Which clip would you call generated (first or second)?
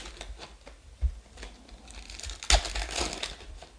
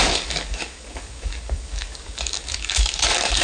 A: second